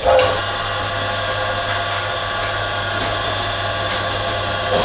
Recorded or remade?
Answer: recorded